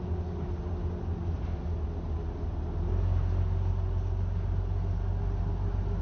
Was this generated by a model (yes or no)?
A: no